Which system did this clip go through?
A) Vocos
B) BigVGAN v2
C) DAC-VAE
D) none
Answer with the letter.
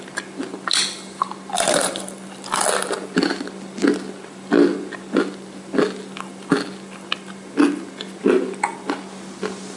D